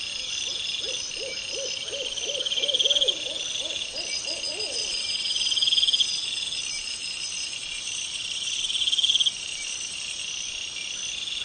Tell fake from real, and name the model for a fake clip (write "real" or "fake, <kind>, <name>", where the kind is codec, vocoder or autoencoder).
real